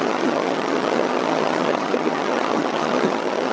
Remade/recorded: remade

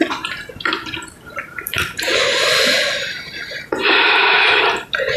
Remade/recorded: remade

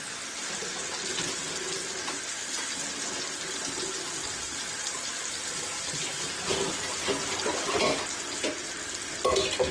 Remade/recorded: recorded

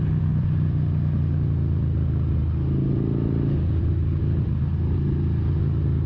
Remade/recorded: recorded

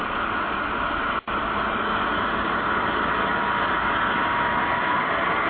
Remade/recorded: recorded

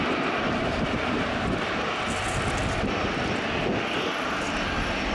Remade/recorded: recorded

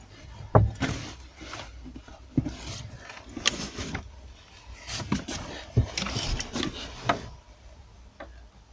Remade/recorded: recorded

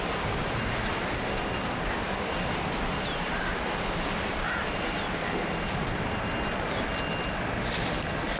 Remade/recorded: recorded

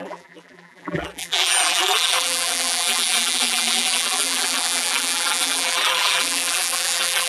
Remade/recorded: remade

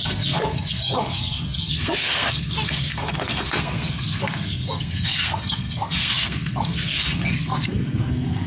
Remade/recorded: remade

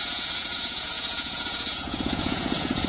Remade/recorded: remade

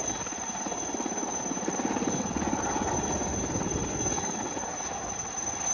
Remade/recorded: recorded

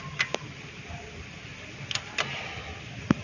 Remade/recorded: recorded